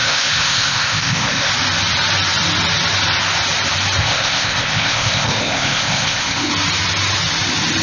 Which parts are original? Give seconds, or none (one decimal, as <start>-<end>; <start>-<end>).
1.5-4.0; 6.5-7.8